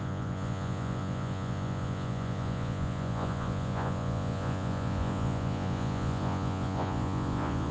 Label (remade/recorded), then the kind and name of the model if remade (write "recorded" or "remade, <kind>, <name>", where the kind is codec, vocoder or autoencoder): remade, vocoder, Vocos